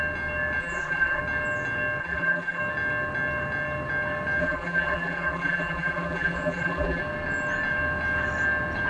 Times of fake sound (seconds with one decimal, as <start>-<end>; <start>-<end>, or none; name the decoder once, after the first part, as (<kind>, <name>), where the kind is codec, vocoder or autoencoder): 0.6-1.2 (vocoder, BigVGAN v2); 2.0-2.6; 4.4-7.0